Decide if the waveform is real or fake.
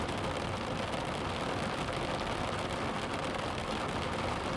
real